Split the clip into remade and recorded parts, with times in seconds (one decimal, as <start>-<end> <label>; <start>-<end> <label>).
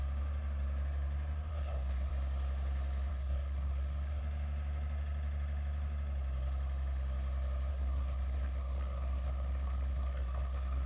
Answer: 0.0-1.5 recorded; 1.5-2.1 remade; 2.1-3.1 recorded; 3.1-4.2 remade; 4.2-7.7 recorded; 7.7-10.9 remade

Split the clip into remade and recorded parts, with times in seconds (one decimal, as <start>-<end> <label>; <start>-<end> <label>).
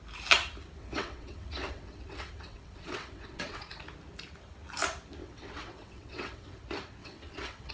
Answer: 0.0-0.8 recorded; 0.8-3.8 remade; 3.8-5.2 recorded; 5.2-6.6 remade; 6.6-7.0 recorded; 7.0-7.7 remade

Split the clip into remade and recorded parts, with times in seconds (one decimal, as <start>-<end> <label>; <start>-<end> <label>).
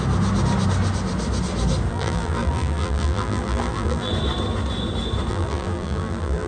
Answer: 0.0-1.9 recorded; 1.9-4.1 remade; 4.1-5.3 recorded; 5.3-6.5 remade